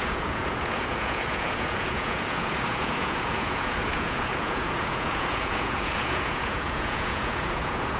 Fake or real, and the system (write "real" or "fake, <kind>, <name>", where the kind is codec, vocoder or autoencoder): fake, vocoder, Vocos